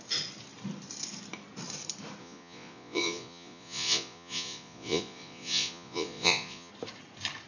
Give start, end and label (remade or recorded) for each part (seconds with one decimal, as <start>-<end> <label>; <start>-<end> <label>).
0.0-2.2 recorded; 2.2-6.7 remade; 6.7-7.5 recorded